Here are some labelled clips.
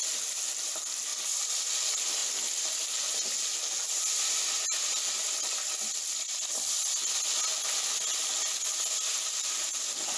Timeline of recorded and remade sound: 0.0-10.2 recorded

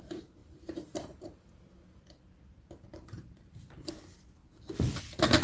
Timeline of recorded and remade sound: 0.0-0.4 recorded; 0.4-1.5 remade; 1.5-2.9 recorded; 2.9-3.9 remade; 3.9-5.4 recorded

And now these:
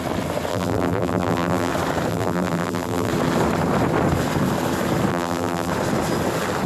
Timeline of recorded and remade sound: 0.0-0.5 recorded; 0.5-1.7 remade; 1.7-2.1 recorded; 2.1-3.1 remade; 3.1-5.1 recorded; 5.1-5.7 remade; 5.7-6.7 recorded

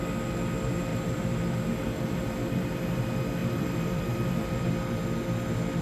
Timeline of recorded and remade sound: 0.0-0.9 recorded; 0.9-3.0 remade; 3.0-3.4 recorded; 3.4-4.7 remade; 4.7-5.8 recorded

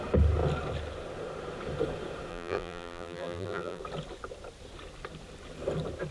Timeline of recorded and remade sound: 0.0-2.3 recorded; 2.3-3.8 remade; 3.8-6.1 recorded

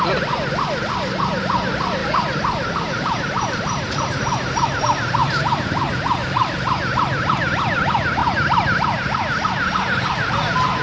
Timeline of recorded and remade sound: 0.0-2.0 recorded; 2.0-4.8 remade; 4.8-5.2 recorded; 5.2-5.9 remade; 5.9-10.8 recorded

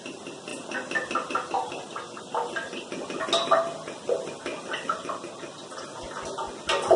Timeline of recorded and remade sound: 0.0-7.0 recorded